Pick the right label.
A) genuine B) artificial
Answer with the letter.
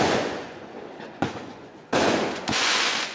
B